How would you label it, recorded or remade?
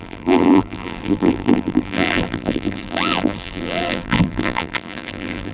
remade